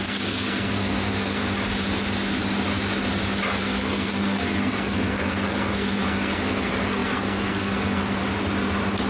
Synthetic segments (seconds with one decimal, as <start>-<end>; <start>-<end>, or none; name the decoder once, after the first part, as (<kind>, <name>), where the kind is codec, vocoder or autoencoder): 0.0-1.4 (codec, SNAC); 3.6-8.2